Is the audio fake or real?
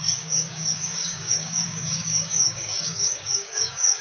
fake